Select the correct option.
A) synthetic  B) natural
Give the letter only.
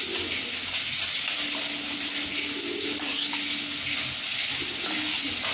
B